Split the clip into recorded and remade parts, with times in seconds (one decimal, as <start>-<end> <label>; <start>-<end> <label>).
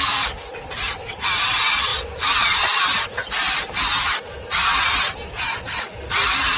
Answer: 0.0-1.9 recorded; 1.9-3.7 remade; 3.7-6.6 recorded